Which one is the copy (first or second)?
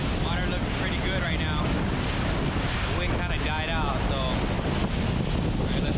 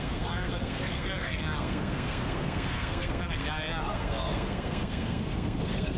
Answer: second